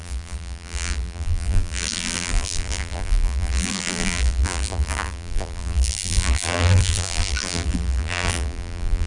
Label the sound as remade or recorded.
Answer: remade